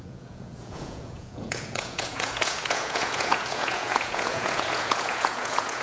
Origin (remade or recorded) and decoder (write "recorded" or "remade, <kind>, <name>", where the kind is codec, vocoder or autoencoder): remade, vocoder, Vocos